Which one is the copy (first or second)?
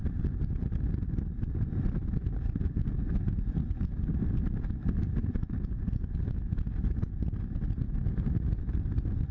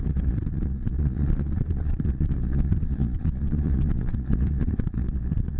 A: second